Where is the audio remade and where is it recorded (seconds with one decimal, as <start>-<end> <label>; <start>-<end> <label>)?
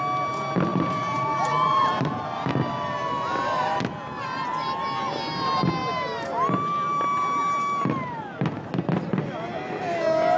0.0-0.7 recorded; 0.7-2.5 remade; 2.5-10.4 recorded